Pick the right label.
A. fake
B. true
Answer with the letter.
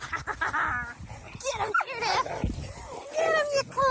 B